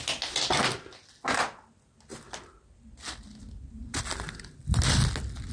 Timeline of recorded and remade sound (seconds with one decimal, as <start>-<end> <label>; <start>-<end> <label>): 0.0-5.5 recorded